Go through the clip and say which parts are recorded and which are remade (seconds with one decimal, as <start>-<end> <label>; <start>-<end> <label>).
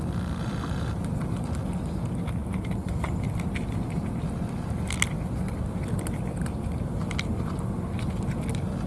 0.0-8.9 recorded